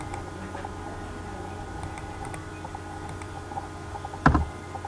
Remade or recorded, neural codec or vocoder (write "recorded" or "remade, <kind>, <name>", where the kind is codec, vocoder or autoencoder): recorded